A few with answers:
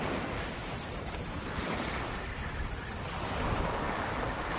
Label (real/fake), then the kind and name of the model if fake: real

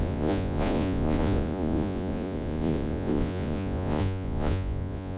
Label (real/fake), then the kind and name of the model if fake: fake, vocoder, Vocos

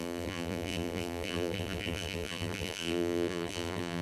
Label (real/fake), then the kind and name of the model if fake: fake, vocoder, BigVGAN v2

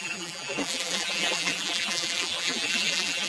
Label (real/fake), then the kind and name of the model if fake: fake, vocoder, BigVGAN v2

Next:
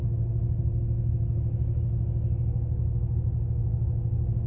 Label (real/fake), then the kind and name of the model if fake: real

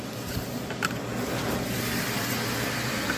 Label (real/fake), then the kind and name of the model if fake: real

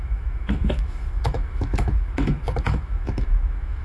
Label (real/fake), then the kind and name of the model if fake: fake, autoencoder, DAC-VAE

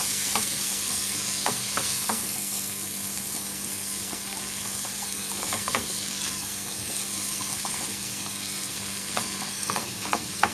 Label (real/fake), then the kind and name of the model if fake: fake, codec, SNAC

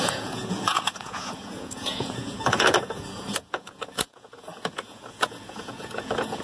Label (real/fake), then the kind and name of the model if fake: fake, vocoder, Vocos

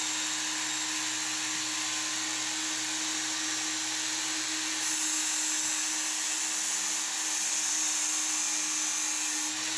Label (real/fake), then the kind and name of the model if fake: real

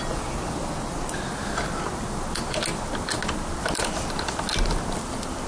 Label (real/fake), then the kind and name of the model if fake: real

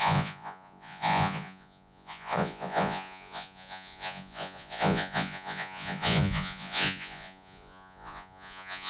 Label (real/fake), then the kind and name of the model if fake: fake, vocoder, Vocos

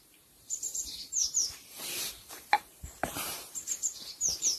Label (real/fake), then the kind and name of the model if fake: fake, vocoder, BigVGAN v2